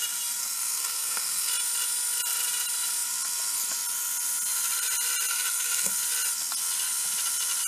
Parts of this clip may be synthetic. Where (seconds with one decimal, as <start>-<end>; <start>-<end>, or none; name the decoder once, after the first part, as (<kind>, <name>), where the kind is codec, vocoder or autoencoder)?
0.4-1.5 (codec, SNAC); 5.3-5.9